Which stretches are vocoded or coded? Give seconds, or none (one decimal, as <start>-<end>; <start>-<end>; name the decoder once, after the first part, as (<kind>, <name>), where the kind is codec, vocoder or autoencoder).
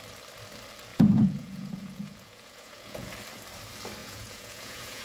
0.9-3.1 (vocoder, Vocos); 4.0-5.0